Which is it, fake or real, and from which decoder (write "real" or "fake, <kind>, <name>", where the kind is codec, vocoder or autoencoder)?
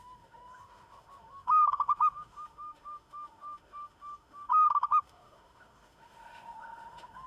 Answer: fake, autoencoder, DAC-VAE